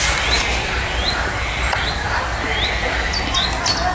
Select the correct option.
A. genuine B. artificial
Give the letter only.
A